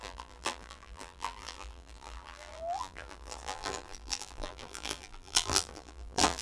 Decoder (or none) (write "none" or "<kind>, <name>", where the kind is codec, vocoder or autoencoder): vocoder, BigVGAN v2